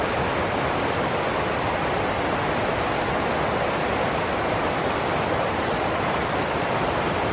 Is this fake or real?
real